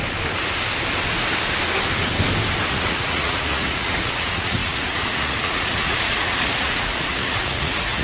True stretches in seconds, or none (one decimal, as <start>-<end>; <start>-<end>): 0.0-2.7